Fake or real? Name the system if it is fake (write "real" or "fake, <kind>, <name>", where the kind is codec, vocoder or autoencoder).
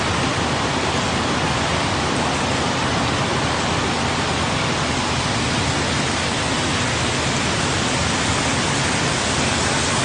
real